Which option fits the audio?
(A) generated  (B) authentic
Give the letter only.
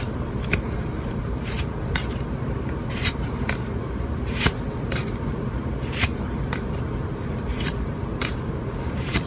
A